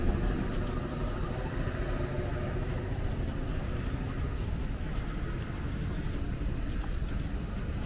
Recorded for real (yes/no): yes